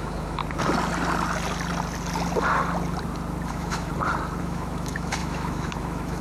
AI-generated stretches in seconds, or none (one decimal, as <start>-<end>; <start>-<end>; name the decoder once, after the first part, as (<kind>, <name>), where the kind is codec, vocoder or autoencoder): 0.0-0.4 (autoencoder, DAC-VAE); 3.5-3.9; 4.4-6.2